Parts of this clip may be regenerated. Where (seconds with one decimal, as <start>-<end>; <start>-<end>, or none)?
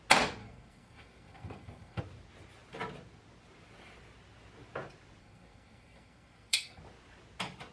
0.4-2.0; 5.2-6.8